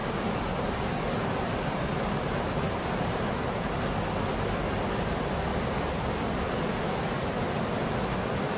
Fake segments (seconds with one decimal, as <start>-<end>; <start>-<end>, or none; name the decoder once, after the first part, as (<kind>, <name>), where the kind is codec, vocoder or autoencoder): 0.0-3.8 (vocoder, BigVGAN v2); 5.5-6.8